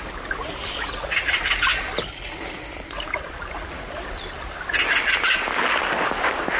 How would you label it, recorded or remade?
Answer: recorded